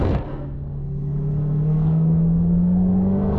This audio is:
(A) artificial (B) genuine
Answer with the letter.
A